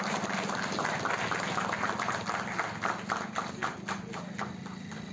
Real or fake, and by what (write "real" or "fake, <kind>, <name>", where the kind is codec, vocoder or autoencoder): real